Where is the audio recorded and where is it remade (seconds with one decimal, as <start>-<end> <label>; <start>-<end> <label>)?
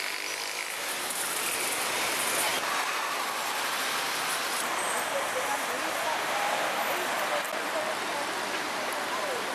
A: 0.0-9.5 recorded